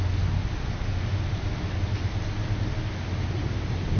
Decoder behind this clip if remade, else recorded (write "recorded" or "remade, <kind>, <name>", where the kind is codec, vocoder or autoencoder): recorded